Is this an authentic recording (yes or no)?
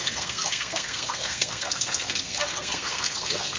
no